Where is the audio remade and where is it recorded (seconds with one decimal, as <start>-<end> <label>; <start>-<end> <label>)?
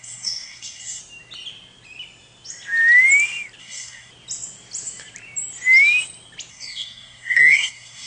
0.0-1.0 remade; 1.0-3.6 recorded; 3.6-4.1 remade; 4.1-6.5 recorded; 6.5-8.1 remade